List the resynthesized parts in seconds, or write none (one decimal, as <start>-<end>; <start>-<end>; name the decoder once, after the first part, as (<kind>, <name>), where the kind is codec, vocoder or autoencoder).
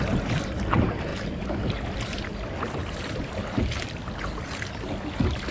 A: none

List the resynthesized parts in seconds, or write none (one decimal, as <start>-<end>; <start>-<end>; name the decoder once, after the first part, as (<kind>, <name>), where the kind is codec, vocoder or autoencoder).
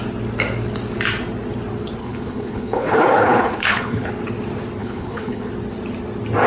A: 2.0-4.1 (codec, HILCodec); 4.8-5.5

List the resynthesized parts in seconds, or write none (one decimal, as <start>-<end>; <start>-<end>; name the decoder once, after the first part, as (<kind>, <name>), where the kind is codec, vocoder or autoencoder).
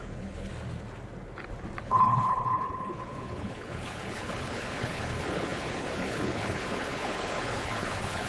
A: 0.0-0.5 (codec, HILCodec); 1.8-8.3